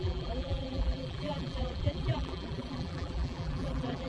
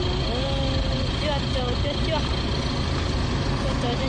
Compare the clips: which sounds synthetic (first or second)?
first